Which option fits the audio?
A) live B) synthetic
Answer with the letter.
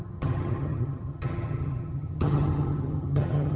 B